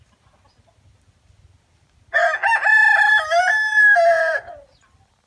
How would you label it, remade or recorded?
recorded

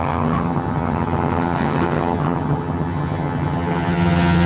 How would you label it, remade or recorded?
remade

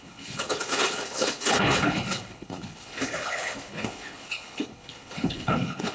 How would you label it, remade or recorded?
remade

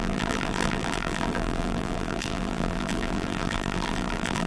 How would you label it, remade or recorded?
remade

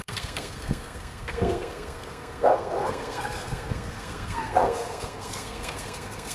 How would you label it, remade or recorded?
remade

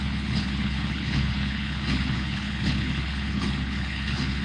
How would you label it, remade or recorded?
remade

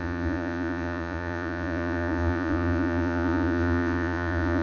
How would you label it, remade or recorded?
remade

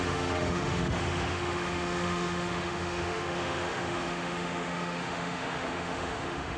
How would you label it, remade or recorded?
remade